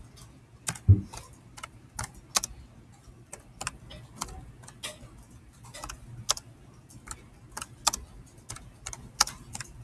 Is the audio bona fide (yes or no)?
yes